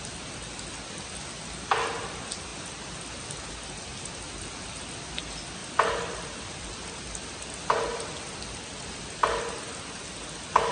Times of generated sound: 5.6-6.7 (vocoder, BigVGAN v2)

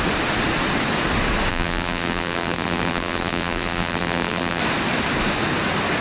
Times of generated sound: 1.5-4.6 (vocoder, BigVGAN v2)